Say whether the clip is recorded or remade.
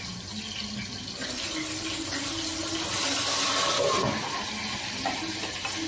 recorded